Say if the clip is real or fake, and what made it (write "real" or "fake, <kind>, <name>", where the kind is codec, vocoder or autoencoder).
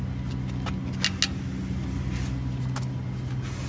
real